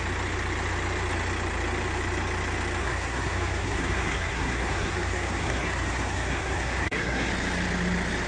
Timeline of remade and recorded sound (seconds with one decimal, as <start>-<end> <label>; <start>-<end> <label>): 0.0-2.8 recorded; 2.8-7.3 remade; 7.3-8.3 recorded

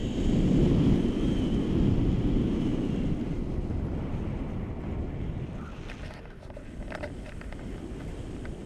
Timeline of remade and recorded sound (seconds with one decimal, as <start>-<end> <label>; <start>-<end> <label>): 0.0-8.7 recorded

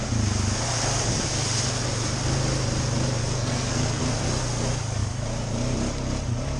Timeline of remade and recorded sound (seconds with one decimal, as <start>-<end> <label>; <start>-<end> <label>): 0.0-3.2 recorded; 3.2-4.0 remade; 4.0-6.6 recorded

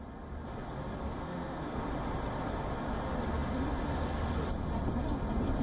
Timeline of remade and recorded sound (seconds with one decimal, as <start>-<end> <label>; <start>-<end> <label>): 0.0-1.2 recorded; 1.2-1.8 remade; 1.8-5.6 recorded

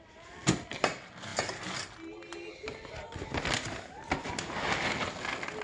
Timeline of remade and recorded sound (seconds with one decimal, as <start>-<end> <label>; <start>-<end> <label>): 0.0-5.6 recorded

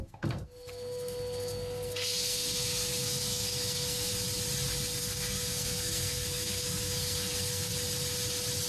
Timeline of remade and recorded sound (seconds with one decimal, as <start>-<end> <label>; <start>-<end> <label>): 0.0-4.1 remade; 4.1-5.0 recorded; 5.0-7.7 remade; 7.7-8.7 recorded

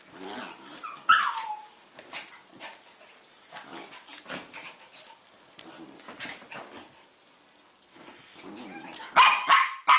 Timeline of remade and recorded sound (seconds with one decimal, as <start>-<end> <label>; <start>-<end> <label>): 0.0-10.0 recorded